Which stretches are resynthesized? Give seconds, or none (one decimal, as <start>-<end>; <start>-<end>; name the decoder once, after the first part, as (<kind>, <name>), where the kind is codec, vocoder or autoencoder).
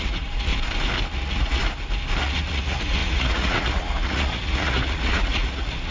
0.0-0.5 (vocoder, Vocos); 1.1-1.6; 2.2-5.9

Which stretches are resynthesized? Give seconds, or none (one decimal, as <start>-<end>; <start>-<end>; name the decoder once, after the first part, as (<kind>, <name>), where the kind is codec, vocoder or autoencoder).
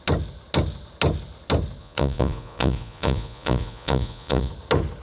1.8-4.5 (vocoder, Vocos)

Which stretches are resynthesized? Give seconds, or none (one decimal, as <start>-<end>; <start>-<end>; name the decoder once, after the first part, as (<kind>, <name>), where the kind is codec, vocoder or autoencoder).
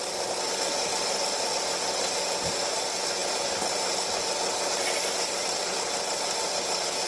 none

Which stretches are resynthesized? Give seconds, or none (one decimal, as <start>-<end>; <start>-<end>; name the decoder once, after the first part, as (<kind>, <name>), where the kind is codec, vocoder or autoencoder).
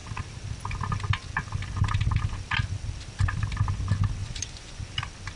4.2-4.8 (vocoder, Vocos)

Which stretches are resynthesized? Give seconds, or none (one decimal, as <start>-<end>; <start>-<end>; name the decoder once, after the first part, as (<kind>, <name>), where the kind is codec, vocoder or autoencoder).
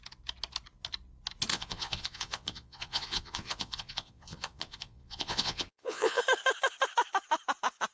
1.5-6.2 (vocoder, Vocos)